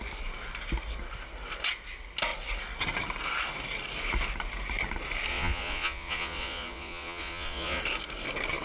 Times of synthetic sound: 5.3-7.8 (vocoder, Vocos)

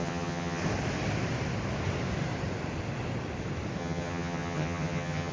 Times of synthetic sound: 0.0-0.6 (vocoder, HiFi-GAN); 3.8-5.3

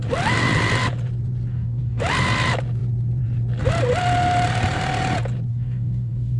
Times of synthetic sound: 1.5-2.0 (codec, DAC); 5.5-6.4

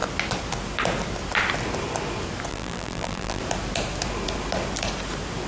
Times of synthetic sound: 2.5-3.4 (vocoder, BigVGAN v2)

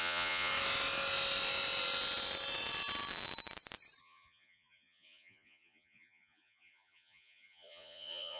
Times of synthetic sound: 0.0-0.5 (vocoder, Vocos); 4.0-8.4

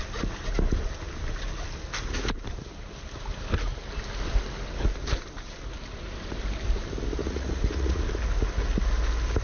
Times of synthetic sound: 7.2-8.0 (vocoder, Vocos)